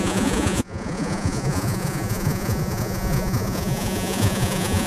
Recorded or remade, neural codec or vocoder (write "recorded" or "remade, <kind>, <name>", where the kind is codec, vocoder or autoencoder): remade, vocoder, Vocos